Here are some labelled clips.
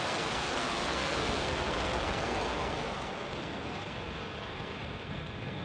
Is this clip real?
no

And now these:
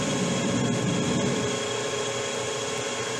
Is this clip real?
yes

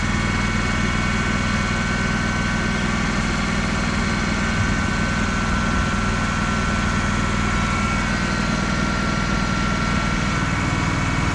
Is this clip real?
yes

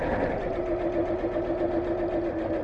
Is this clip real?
yes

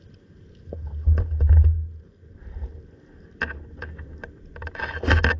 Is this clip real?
yes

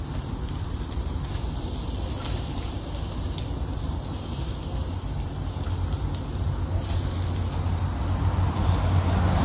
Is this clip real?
yes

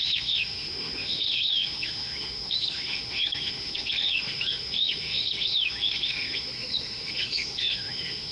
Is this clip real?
no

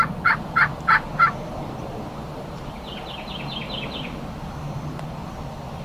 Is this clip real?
yes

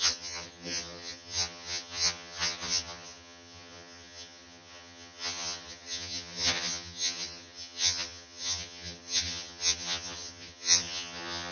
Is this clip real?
no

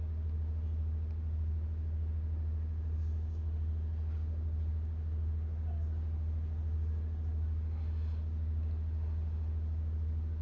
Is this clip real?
yes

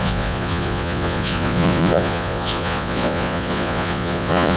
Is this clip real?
no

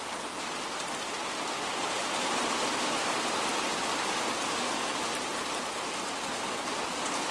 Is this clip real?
yes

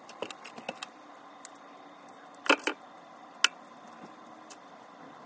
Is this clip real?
yes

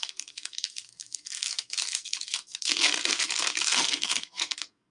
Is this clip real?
no